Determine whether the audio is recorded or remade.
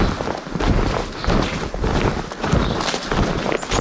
recorded